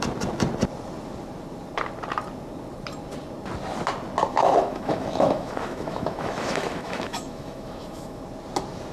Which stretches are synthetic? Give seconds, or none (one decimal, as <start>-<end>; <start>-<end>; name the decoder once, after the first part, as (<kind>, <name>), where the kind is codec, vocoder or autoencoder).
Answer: 4.3-8.2 (autoencoder, DAC-VAE)